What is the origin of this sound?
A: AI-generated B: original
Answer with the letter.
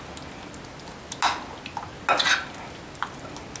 B